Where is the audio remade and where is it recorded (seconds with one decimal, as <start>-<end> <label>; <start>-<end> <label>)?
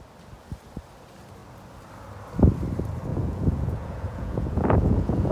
0.0-3.1 recorded; 3.1-5.3 remade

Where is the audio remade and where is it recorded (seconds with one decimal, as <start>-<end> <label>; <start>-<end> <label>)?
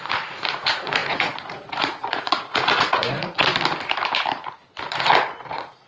0.0-3.5 remade; 3.5-4.9 recorded; 4.9-5.9 remade